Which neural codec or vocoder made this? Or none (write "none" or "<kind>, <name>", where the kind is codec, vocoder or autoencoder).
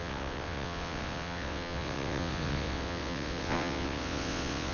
vocoder, WaveNeXt